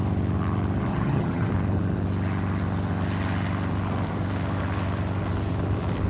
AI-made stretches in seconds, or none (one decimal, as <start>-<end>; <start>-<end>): 0.9-1.5